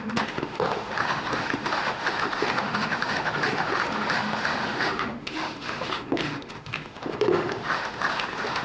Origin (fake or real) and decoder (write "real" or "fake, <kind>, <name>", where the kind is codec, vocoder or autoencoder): fake, autoencoder, DAC-VAE